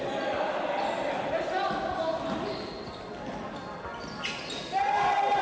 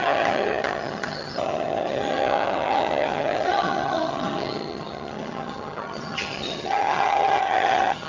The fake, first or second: second